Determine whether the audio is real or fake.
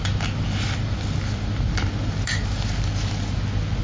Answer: real